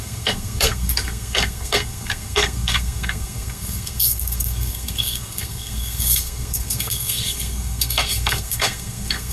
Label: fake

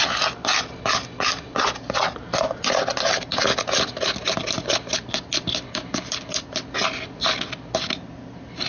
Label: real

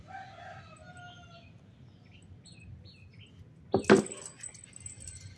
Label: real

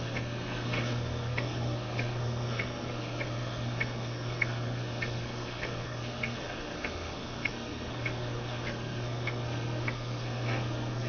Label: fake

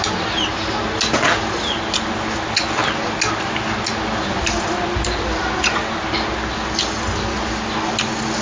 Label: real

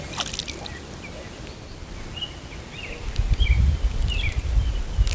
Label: real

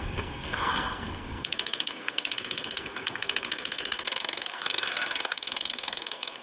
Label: fake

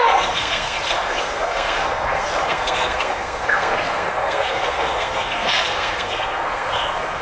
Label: fake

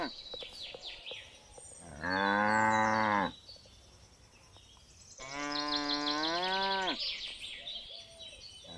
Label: real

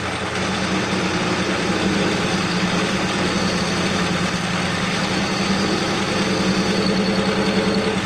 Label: real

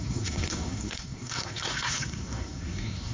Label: fake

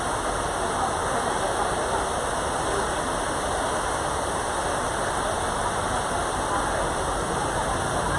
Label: real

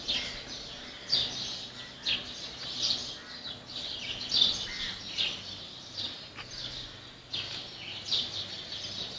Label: real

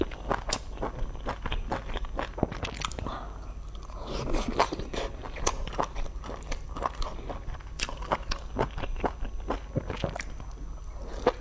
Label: real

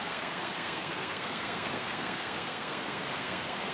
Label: fake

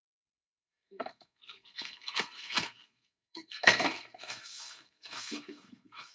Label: fake